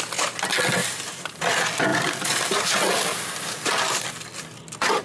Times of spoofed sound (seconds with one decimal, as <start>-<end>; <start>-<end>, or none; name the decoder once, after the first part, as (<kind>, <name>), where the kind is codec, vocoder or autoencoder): 0.8-1.4 (vocoder, BigVGAN v2); 1.9-2.8